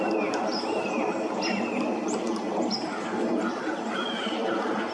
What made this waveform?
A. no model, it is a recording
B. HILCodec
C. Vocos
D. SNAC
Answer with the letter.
A